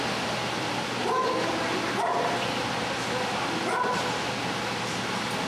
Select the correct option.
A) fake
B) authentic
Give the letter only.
B